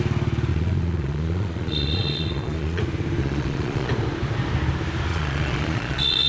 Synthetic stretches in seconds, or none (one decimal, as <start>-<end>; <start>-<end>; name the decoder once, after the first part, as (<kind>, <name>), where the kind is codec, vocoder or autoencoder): 0.5-2.8 (vocoder, Vocos); 3.2-3.9; 5.1-6.3